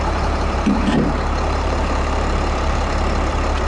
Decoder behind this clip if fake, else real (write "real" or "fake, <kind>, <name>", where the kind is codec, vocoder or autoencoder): fake, vocoder, BigVGAN v2